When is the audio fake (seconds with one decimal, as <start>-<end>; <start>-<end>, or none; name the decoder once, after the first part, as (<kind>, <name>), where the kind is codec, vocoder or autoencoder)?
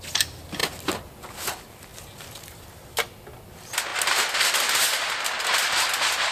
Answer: 3.9-4.5 (vocoder, BigVGAN v2)